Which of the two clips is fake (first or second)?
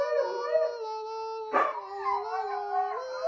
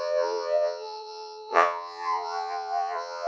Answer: second